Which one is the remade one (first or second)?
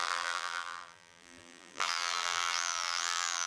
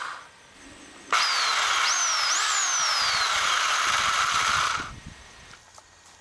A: first